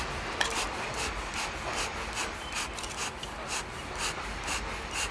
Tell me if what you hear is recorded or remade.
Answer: recorded